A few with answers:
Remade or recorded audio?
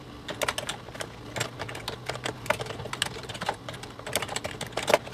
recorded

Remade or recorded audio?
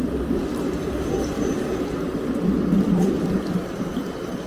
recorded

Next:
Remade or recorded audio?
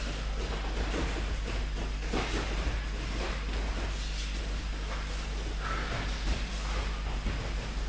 recorded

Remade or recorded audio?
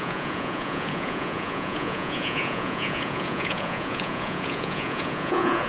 remade